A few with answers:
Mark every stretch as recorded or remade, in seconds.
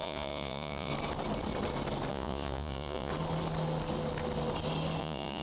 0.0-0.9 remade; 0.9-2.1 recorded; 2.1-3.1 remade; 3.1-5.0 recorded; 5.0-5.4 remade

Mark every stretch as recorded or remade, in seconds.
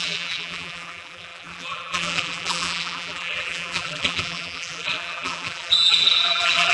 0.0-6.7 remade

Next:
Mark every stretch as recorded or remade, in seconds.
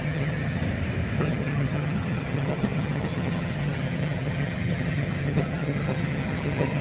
0.0-0.6 remade; 0.6-1.2 recorded; 1.2-6.8 remade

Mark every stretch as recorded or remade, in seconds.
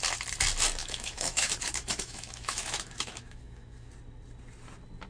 0.0-0.8 recorded; 0.8-3.9 remade; 3.9-5.1 recorded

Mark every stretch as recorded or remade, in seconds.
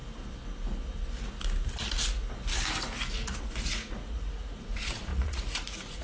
0.0-3.6 recorded; 3.6-6.0 remade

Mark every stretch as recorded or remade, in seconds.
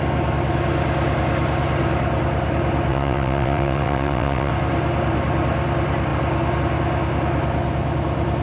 0.0-2.9 recorded; 2.9-4.5 remade; 4.5-8.4 recorded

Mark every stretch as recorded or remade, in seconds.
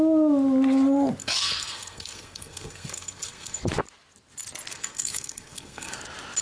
0.0-1.2 recorded; 1.2-3.6 remade; 3.6-4.7 recorded; 4.7-6.0 remade; 6.0-6.4 recorded